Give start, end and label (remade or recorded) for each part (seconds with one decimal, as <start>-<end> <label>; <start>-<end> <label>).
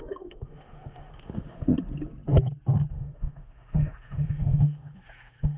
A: 0.0-1.7 remade; 1.7-2.9 recorded; 2.9-5.6 remade